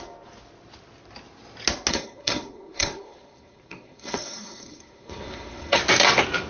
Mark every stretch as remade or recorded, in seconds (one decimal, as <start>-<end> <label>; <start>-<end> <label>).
0.0-1.9 recorded; 1.9-5.8 remade; 5.8-6.5 recorded